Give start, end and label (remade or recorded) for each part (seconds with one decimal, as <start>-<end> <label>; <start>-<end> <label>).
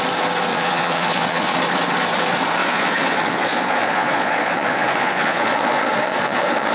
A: 0.0-0.5 recorded; 0.5-1.6 remade; 1.6-2.6 recorded; 2.6-6.7 remade